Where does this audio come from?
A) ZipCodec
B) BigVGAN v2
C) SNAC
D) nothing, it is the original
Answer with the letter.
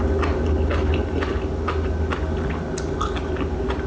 D